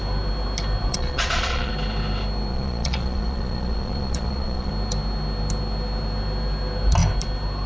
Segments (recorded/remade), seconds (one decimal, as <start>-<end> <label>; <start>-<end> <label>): 0.0-0.9 recorded; 0.9-1.7 remade; 1.7-2.5 recorded; 2.5-4.7 remade; 4.7-7.7 recorded